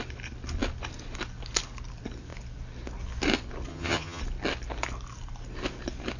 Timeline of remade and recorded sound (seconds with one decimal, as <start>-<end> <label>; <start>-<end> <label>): 0.0-3.7 recorded; 3.7-4.2 remade; 4.2-6.2 recorded